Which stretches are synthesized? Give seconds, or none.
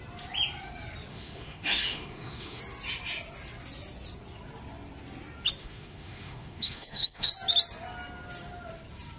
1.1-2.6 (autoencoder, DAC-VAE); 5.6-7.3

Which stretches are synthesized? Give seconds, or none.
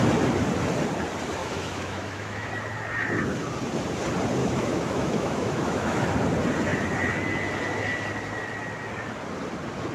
1.4-2.5 (autoencoder, DAC-VAE); 4.4-6.1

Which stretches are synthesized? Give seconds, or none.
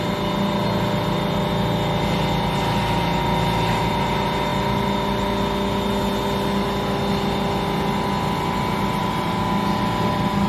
none